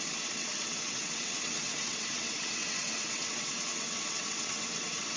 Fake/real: fake